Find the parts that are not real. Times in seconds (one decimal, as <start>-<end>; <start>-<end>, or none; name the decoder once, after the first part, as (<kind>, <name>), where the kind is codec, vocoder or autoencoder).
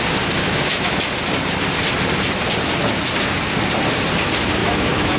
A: 0.4-1.1 (autoencoder, DAC-VAE); 4.6-5.2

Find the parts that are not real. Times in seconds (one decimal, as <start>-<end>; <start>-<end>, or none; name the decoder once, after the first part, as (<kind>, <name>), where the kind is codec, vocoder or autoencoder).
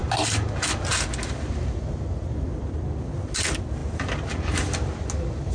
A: none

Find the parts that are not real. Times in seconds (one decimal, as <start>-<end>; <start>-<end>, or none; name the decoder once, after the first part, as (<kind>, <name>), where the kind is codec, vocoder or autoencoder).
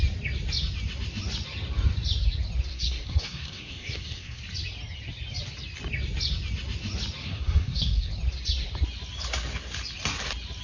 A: 2.7-4.4 (codec, SNAC); 7.2-8.1